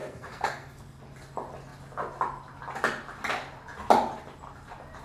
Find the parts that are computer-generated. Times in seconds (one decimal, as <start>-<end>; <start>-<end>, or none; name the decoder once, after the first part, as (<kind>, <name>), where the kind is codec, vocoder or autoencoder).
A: 0.0-1.0 (codec, SNAC)